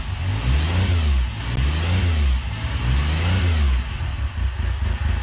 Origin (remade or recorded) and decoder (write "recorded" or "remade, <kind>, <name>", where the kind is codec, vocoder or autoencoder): recorded